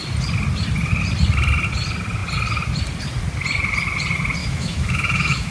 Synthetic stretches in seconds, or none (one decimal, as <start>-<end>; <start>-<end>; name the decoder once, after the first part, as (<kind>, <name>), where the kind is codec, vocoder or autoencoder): 4.4-5.5 (autoencoder, DAC-VAE)